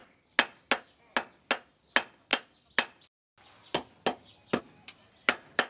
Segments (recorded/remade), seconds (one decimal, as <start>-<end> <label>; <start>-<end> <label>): 0.0-5.7 recorded